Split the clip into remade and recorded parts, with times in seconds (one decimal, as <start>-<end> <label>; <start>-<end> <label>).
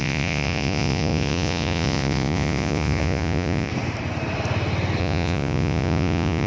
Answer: 0.0-3.7 remade; 3.7-5.0 recorded; 5.0-6.5 remade